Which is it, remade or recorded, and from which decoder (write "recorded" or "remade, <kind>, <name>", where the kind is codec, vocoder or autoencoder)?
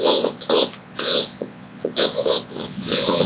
remade, vocoder, Vocos